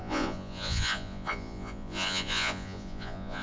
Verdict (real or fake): fake